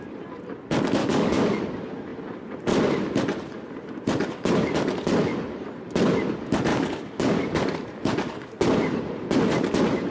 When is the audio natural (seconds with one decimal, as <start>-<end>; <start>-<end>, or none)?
0.0-1.0; 1.6-6.7; 7.7-10.1